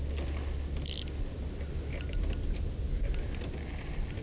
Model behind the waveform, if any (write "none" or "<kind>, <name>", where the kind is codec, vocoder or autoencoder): none